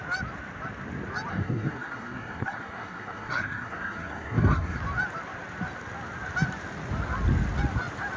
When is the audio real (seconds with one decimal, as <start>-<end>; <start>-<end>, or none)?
0.0-1.3; 4.8-8.2